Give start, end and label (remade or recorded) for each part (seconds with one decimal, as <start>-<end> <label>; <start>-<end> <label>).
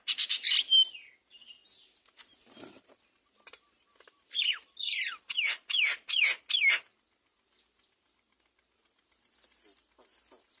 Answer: 0.0-10.6 recorded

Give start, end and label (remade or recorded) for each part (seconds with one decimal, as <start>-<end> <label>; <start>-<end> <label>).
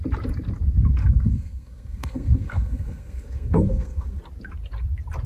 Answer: 0.0-1.0 recorded; 1.0-4.2 remade; 4.2-5.3 recorded